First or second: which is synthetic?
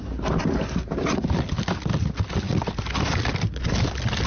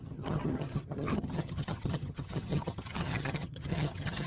second